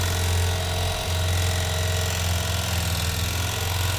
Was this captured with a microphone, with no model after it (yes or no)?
yes